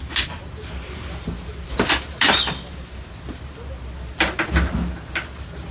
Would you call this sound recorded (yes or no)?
yes